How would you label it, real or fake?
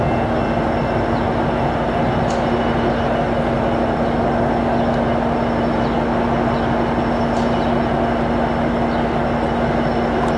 real